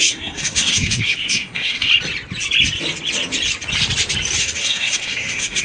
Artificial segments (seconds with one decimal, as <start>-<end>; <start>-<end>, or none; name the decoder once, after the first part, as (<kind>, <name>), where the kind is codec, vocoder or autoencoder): 0.0-1.9 (codec, SNAC); 4.4-5.6

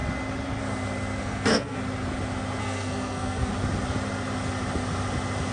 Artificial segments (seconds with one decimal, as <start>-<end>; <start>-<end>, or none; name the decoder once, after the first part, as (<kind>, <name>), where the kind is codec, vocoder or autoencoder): 1.2-1.8 (codec, SNAC); 2.6-3.5